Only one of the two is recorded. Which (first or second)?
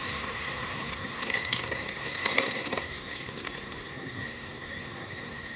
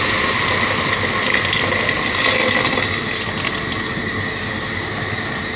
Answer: second